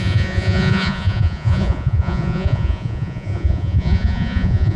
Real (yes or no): no